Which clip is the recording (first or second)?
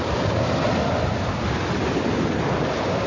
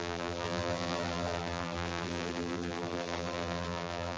first